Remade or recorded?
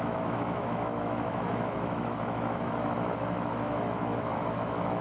remade